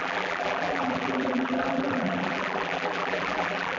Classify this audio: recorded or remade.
remade